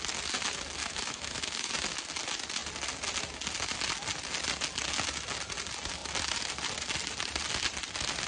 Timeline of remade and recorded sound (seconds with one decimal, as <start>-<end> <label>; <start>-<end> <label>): 0.0-0.8 recorded; 0.8-1.7 remade; 1.7-8.3 recorded